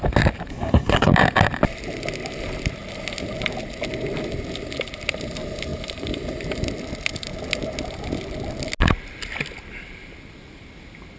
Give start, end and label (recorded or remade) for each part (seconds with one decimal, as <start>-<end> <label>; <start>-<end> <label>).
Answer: 0.0-0.5 recorded; 0.5-1.1 remade; 1.1-11.2 recorded